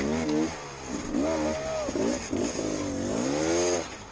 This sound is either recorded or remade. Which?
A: recorded